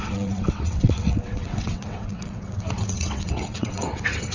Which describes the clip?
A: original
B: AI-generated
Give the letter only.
B